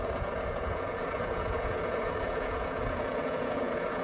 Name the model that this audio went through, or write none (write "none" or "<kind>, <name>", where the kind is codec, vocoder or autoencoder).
vocoder, Vocos